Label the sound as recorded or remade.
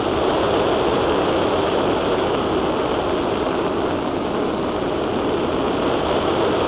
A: recorded